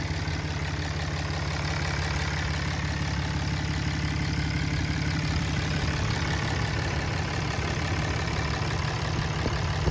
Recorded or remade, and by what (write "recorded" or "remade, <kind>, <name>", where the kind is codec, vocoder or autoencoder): recorded